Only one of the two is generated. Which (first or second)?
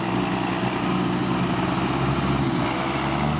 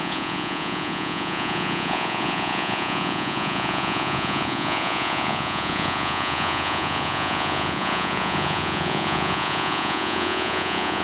second